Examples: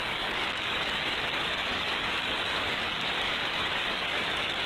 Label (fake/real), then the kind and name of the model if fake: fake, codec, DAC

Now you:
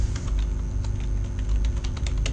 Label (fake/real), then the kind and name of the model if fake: real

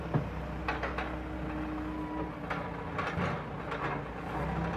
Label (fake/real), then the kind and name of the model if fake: real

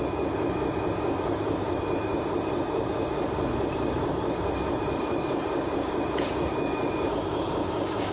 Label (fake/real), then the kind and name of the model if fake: fake, codec, DAC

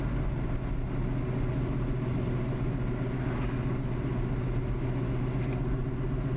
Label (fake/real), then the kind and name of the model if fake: real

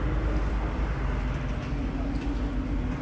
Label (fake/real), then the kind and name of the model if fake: real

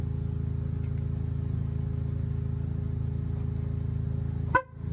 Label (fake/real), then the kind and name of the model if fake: real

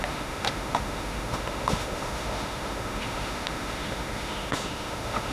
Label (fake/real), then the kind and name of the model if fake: fake, autoencoder, DAC-VAE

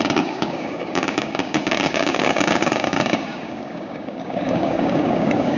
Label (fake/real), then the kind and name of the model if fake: fake, codec, DAC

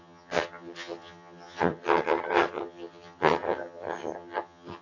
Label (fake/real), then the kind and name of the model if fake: fake, vocoder, HiFi-GAN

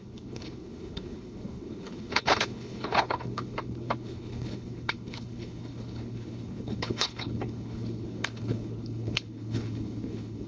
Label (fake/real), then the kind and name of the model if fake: fake, codec, HILCodec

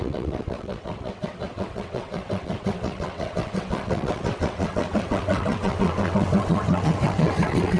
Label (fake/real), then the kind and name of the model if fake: fake, vocoder, WaveNeXt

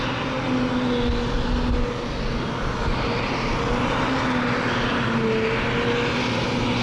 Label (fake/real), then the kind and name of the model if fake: real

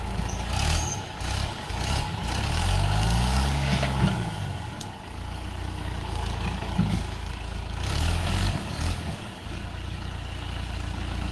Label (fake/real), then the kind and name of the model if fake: fake, codec, DAC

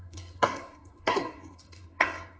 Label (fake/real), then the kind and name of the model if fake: fake, codec, SNAC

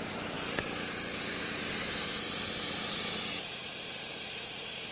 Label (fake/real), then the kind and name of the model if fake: fake, vocoder, BigVGAN v2